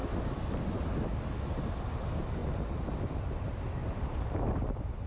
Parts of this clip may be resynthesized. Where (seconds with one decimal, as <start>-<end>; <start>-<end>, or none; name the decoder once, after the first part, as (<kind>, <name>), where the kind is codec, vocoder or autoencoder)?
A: 3.8-4.4 (vocoder, BigVGAN v2)